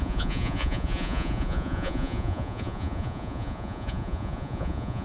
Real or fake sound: fake